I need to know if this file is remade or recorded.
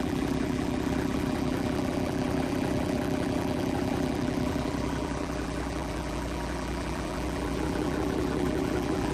remade